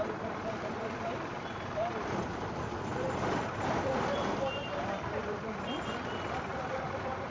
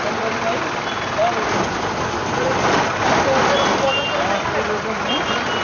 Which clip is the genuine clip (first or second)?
second